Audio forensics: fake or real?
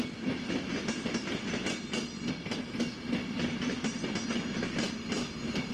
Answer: real